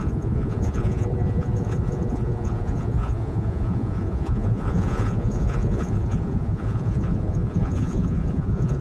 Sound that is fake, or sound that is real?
fake